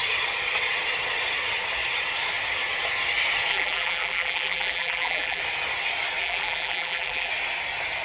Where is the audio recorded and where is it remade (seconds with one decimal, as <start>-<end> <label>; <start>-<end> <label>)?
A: 0.0-3.5 recorded; 3.5-5.4 remade; 5.4-6.2 recorded; 6.2-7.3 remade; 7.3-8.0 recorded